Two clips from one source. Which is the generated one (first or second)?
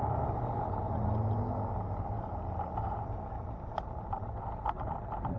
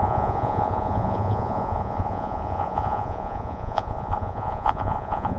second